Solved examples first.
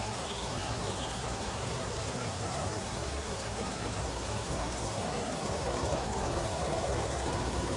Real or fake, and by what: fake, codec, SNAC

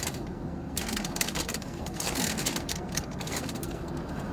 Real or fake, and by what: fake, codec, SNAC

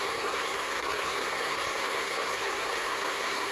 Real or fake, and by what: fake, codec, SNAC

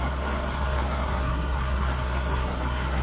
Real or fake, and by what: fake, codec, SNAC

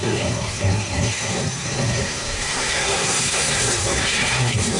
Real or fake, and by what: fake, codec, SNAC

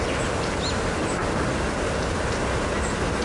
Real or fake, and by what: real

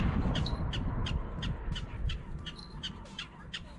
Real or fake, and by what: real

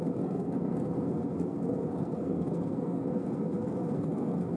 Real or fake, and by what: fake, codec, SNAC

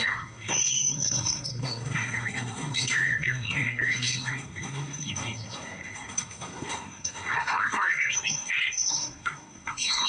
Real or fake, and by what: fake, codec, SNAC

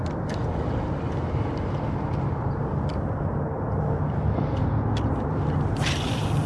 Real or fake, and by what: real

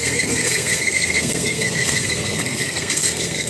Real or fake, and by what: fake, codec, SNAC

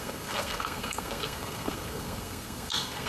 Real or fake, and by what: fake, codec, SNAC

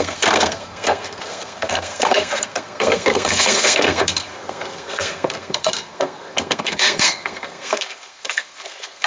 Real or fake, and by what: fake, codec, SNAC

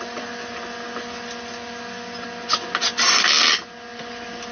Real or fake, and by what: real